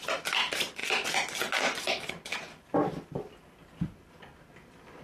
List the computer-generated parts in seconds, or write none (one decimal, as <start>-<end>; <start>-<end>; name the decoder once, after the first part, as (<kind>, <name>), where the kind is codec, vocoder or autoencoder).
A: none